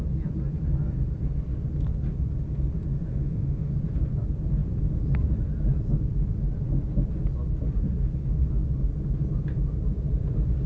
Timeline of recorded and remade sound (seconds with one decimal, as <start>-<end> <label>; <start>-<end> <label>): 0.0-3.1 recorded; 3.1-3.7 remade; 3.7-10.7 recorded